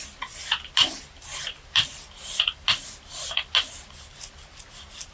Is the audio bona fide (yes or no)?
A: yes